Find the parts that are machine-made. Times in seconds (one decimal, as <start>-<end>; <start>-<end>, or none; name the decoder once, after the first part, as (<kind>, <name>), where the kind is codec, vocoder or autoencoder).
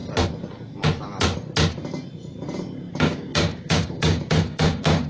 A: 2.9-5.1 (codec, DAC)